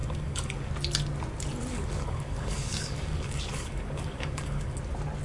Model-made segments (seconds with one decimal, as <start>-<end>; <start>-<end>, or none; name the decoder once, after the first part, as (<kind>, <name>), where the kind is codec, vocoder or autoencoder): 0.0-0.7 (codec, DAC); 1.7-4.8